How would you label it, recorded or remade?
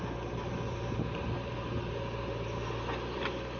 recorded